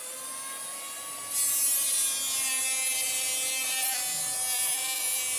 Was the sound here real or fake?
real